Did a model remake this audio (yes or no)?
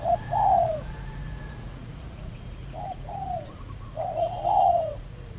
yes